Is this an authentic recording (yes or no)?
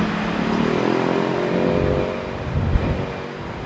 yes